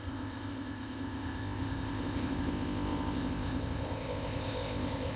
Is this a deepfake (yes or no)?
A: yes